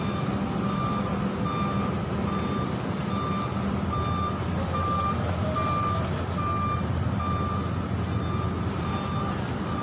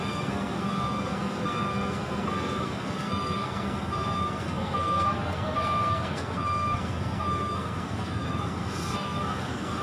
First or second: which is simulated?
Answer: second